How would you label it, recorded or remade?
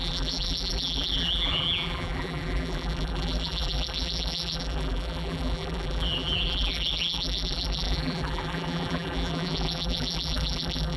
remade